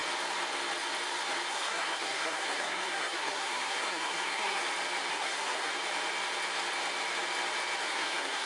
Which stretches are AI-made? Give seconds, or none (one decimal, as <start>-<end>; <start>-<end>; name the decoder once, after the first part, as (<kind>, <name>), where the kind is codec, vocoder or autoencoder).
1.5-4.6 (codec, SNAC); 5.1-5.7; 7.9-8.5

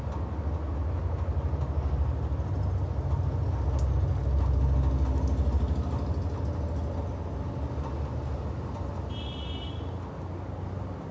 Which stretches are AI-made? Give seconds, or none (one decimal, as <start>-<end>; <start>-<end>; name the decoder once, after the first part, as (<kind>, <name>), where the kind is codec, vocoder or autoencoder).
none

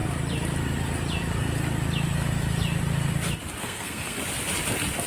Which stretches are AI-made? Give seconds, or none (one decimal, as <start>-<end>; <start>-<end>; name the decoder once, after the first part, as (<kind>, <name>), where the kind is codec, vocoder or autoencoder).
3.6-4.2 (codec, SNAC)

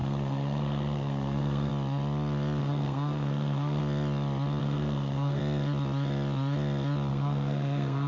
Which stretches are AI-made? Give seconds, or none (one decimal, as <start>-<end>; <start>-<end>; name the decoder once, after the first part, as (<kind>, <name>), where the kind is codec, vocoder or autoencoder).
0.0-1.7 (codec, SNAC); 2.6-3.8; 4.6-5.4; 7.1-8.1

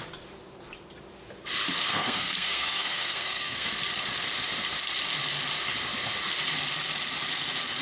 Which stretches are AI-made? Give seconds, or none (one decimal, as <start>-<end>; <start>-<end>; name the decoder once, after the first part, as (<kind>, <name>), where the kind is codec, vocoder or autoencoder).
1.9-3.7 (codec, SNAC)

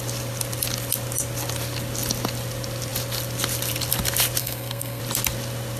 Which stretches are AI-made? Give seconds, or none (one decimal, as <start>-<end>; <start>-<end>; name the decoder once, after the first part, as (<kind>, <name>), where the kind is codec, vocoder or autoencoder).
4.4-5.0 (codec, SNAC)